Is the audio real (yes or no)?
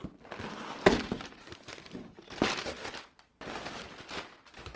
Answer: yes